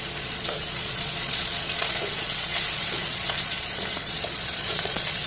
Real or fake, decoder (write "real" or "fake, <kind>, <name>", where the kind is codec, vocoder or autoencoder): fake, vocoder, Vocos